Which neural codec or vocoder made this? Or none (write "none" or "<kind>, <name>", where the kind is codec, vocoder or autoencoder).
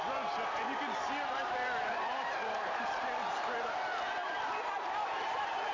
none